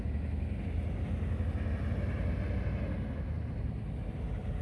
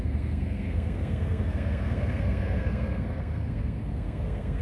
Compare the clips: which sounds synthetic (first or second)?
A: second